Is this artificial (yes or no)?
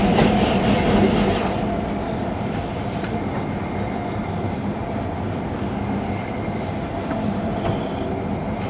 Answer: no